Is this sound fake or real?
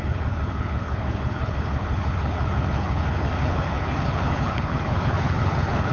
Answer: fake